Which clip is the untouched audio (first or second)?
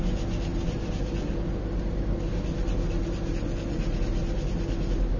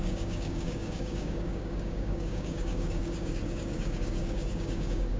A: first